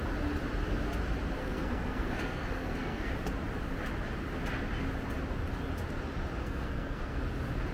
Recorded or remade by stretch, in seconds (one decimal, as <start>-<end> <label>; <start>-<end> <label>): 0.0-1.4 recorded; 1.4-3.1 remade; 3.1-6.4 recorded; 6.4-7.2 remade; 7.2-7.7 recorded